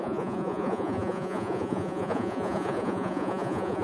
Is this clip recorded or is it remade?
remade